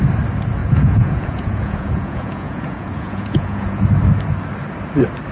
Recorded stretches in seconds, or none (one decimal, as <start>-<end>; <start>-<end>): 0.0-0.6; 3.8-5.3